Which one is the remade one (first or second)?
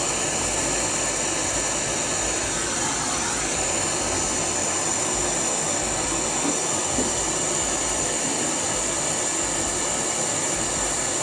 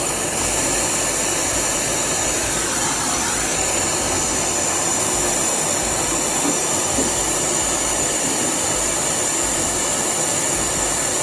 second